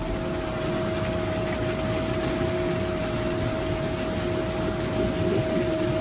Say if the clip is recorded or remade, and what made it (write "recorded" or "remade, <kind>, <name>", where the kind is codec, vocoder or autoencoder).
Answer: recorded